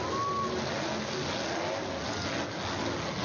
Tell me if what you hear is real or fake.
real